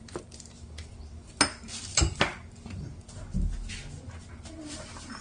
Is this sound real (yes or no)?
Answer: yes